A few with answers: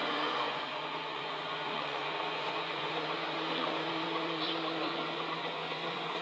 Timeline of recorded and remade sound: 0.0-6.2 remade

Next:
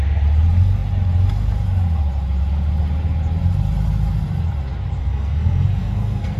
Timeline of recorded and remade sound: 0.0-5.0 recorded; 5.0-6.4 remade

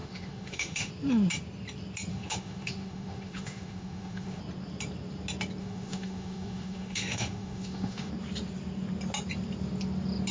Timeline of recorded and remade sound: 0.0-0.9 remade; 0.9-2.1 recorded; 2.1-4.4 remade; 4.4-5.6 recorded; 5.6-8.1 remade; 8.1-10.3 recorded

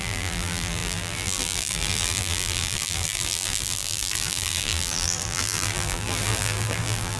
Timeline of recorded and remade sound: 0.0-7.2 remade